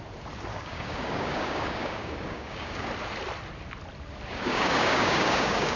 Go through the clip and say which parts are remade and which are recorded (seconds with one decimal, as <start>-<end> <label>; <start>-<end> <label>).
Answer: 0.0-0.5 recorded; 0.5-2.9 remade; 2.9-4.3 recorded; 4.3-5.8 remade